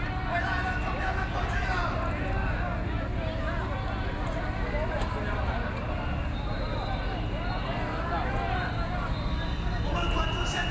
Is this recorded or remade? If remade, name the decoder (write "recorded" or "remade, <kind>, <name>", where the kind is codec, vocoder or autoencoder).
recorded